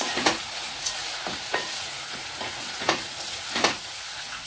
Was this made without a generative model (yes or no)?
no